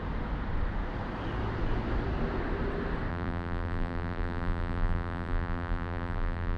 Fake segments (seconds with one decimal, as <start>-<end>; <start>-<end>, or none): 3.1-6.6